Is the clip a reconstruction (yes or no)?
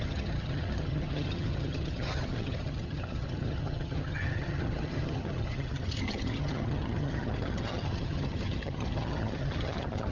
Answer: yes